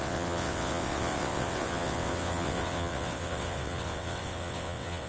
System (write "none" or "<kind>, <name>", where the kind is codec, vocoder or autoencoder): vocoder, WaveNeXt